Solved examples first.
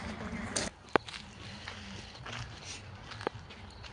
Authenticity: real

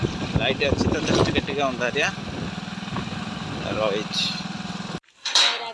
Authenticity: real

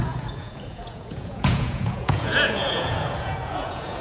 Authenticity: fake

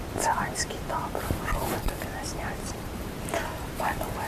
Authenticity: fake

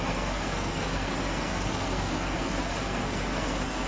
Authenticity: fake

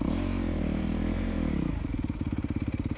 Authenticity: fake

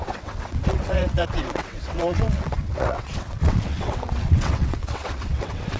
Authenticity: fake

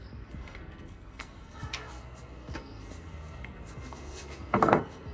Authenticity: fake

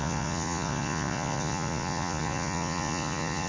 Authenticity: fake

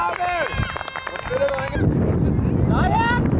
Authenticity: real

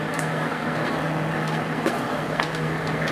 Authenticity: fake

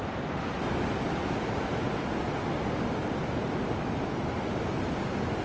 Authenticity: real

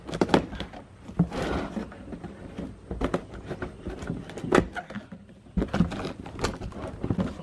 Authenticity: real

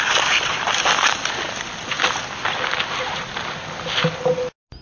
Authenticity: real